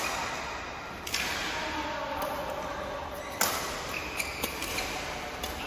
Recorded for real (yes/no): yes